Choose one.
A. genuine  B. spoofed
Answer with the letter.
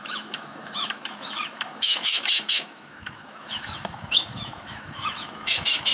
B